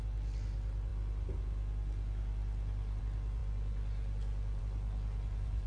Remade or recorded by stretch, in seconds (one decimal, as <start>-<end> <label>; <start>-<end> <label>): 0.0-5.7 recorded